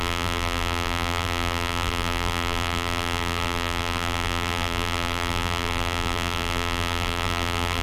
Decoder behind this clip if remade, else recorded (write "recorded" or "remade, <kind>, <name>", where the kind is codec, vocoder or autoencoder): remade, vocoder, BigVGAN v2